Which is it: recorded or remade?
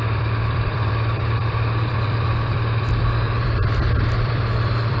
remade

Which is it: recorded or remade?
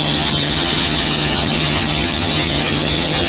remade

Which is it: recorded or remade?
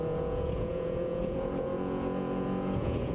remade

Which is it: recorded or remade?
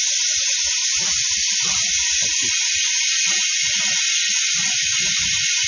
recorded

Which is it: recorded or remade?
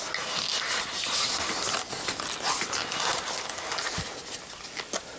recorded